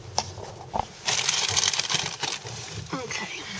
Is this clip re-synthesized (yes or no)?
no